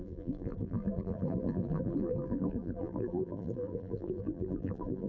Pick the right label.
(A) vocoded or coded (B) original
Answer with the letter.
A